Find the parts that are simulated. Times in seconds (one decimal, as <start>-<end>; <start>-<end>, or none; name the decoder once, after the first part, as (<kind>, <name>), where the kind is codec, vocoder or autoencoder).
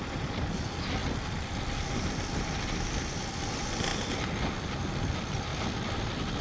none